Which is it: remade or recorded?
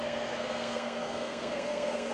remade